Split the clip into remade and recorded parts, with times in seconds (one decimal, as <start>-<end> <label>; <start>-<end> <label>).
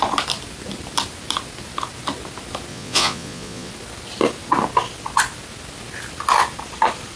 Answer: 0.0-2.7 recorded; 2.7-3.7 remade; 3.7-7.2 recorded